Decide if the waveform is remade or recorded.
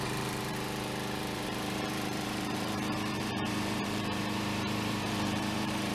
remade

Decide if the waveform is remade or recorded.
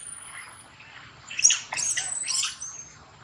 recorded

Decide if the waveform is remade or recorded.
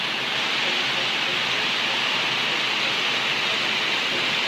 recorded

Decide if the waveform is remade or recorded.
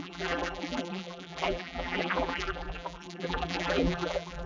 remade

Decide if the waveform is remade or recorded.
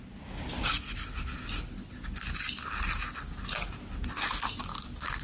recorded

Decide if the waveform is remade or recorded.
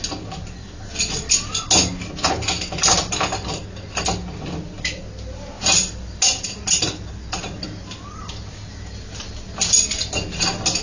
recorded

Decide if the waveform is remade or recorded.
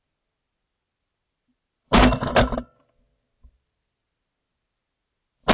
remade